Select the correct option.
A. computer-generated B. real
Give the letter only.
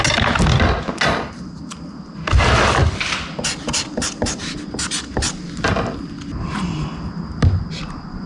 B